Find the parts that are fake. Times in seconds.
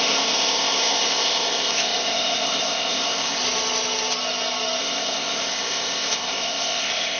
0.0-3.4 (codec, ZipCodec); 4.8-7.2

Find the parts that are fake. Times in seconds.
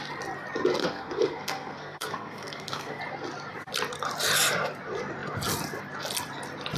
0.8-3.0 (codec, SNAC)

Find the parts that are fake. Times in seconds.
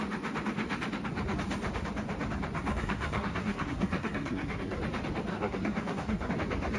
2.7-4.8 (codec, SNAC); 5.3-6.3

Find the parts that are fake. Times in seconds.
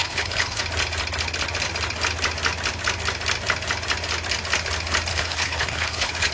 0.0-0.6 (codec, HILCodec); 5.1-6.3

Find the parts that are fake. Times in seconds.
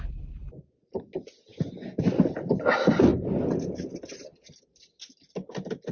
none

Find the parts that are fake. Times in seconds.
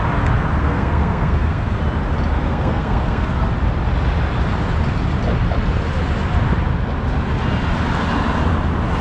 0.6-1.8 (codec, SNAC); 2.5-3.3